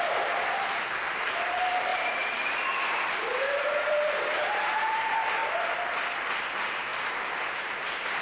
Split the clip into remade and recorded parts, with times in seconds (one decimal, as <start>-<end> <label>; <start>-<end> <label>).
0.0-1.9 recorded; 1.9-4.6 remade; 4.6-6.9 recorded; 6.9-8.2 remade